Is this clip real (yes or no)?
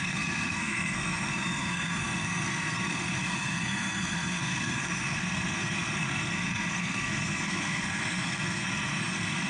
no